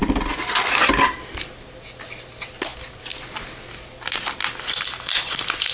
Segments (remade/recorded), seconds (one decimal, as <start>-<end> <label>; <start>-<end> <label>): 0.0-5.7 recorded